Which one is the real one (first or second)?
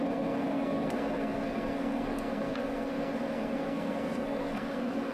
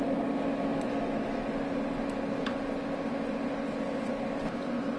second